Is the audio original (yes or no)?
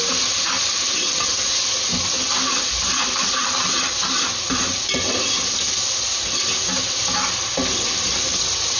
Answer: yes